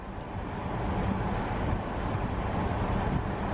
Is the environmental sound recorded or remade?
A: recorded